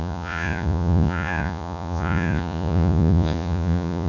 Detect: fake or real fake